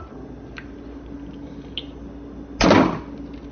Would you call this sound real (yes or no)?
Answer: yes